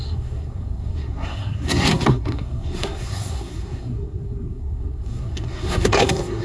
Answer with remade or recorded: remade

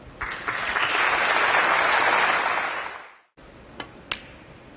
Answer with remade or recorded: recorded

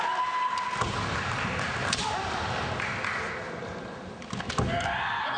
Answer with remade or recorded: recorded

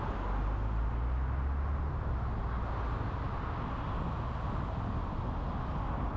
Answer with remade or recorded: recorded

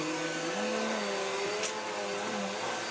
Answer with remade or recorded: recorded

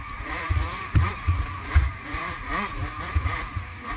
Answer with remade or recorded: remade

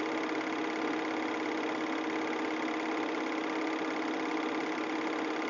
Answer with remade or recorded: recorded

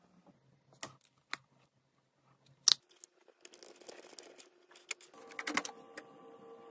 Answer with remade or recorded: recorded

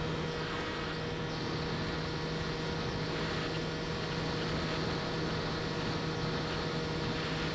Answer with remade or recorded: recorded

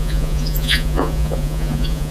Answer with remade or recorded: remade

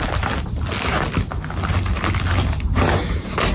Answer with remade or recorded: recorded